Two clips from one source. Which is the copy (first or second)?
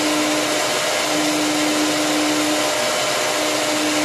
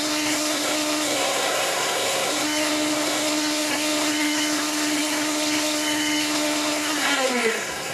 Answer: second